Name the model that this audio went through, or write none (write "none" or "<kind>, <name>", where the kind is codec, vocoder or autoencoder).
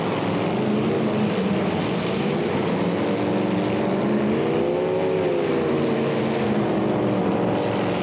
none